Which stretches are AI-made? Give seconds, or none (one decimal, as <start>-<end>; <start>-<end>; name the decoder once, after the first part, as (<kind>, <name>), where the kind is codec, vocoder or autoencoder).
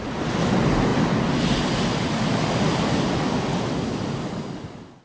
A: none